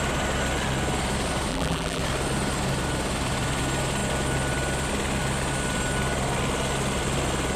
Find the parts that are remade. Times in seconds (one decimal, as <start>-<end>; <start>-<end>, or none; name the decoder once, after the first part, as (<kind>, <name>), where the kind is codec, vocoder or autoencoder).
1.5-2.0 (vocoder, BigVGAN v2)